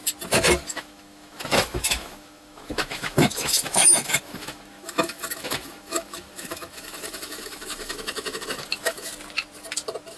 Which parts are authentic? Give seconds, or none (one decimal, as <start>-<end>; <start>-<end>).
0.0-0.7; 9.1-10.2